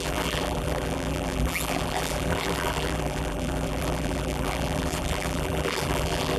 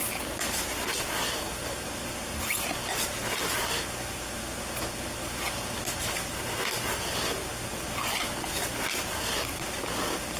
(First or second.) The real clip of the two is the second